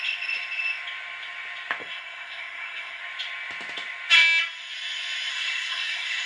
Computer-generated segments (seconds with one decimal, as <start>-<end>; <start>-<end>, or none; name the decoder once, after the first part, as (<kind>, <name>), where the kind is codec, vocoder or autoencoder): 1.8-3.0 (codec, SNAC); 5.3-6.3